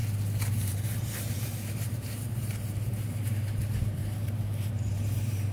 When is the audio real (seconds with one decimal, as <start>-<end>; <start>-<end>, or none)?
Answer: 0.0-0.5